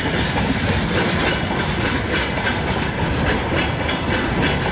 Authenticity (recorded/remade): recorded